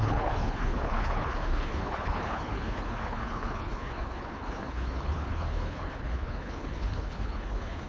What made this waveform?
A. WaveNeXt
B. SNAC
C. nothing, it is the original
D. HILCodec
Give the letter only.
D